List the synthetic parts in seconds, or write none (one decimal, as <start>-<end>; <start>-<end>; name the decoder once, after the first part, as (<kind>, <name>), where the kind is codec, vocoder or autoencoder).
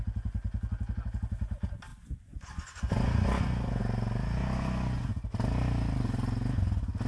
1.9-3.8 (vocoder, Vocos); 4.4-5.1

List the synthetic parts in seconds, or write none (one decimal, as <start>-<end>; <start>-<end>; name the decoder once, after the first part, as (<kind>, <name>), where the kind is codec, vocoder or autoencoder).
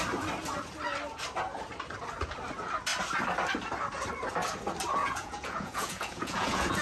5.0-6.8 (vocoder, Vocos)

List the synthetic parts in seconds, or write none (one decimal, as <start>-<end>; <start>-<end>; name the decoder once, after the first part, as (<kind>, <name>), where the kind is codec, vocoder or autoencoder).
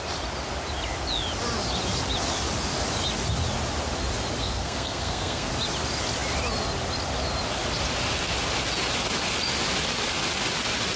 4.4-5.5 (codec, SNAC)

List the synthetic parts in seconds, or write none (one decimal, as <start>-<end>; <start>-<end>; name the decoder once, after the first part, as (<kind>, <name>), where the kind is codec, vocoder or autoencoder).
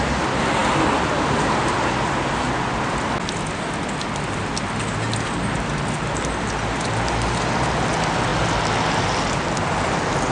none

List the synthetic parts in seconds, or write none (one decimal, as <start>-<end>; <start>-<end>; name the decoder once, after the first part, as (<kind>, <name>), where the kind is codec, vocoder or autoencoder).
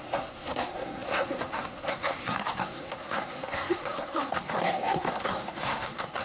0.0-6.2 (codec, SNAC)